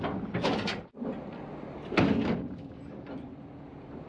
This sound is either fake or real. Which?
fake